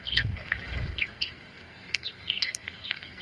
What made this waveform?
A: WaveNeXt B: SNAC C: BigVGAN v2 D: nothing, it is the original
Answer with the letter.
B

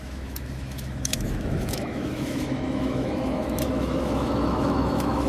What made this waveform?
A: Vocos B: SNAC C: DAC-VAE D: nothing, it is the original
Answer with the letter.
C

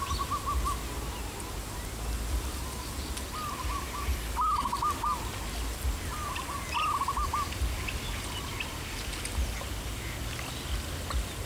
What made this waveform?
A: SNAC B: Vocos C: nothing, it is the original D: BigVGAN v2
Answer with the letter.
C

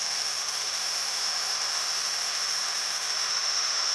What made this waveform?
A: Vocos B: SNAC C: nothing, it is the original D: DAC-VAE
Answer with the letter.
D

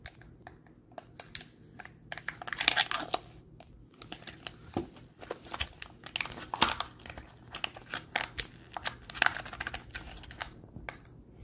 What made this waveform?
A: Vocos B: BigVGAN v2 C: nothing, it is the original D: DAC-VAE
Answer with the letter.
C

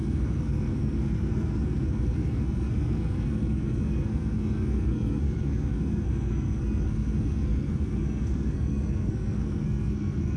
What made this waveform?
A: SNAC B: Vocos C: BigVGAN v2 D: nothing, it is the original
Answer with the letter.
A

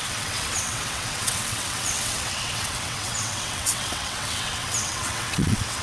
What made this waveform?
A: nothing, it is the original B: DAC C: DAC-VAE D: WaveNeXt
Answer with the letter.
D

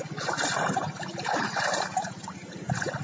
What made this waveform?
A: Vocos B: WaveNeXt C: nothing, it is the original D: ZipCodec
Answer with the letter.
C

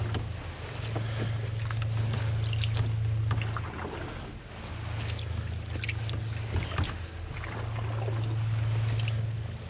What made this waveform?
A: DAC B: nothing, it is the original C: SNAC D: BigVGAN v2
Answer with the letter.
B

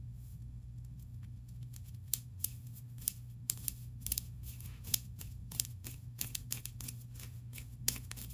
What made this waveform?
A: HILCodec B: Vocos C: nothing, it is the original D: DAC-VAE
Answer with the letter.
D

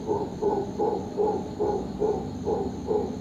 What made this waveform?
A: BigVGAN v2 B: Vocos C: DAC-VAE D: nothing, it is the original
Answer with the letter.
D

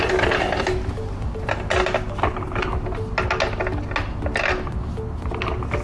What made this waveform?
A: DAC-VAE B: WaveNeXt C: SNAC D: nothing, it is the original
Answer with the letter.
D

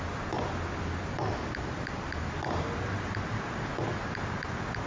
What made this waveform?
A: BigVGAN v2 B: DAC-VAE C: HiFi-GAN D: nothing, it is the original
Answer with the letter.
D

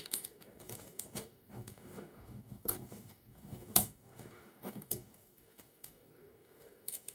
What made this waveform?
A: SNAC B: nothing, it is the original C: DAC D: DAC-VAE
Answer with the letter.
C